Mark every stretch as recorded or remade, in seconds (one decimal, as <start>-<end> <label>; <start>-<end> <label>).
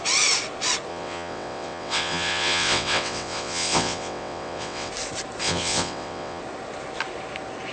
0.0-0.9 recorded; 0.9-4.9 remade; 4.9-5.4 recorded; 5.4-6.4 remade; 6.4-7.7 recorded